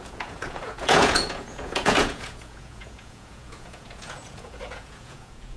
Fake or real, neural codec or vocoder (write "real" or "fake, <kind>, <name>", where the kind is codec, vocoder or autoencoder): fake, vocoder, Vocos